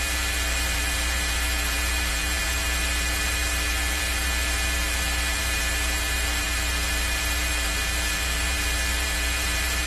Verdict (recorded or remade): remade